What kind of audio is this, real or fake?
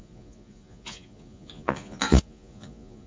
fake